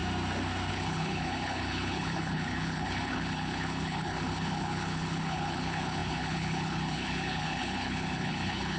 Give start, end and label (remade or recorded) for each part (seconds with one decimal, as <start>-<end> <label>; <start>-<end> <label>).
0.0-0.7 recorded; 0.7-8.8 remade